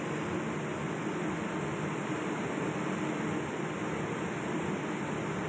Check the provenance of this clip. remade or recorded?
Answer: recorded